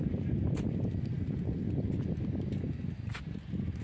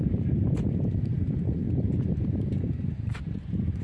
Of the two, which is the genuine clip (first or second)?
first